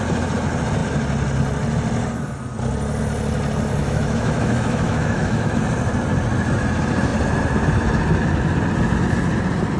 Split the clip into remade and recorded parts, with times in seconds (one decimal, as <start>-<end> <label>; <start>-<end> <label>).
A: 0.0-3.8 recorded; 3.8-5.6 remade; 5.6-9.8 recorded

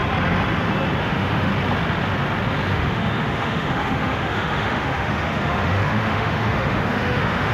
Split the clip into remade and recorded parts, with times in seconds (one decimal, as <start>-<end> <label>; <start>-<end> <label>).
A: 0.0-1.0 recorded; 1.0-1.5 remade; 1.5-2.7 recorded; 2.7-7.5 remade

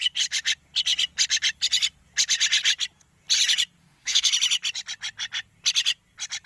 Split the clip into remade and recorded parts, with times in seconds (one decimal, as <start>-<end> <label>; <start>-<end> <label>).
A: 0.0-3.8 recorded; 3.8-4.3 remade; 4.3-6.5 recorded